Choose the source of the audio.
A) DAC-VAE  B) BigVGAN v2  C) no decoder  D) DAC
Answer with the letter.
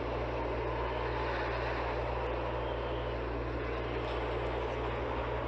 C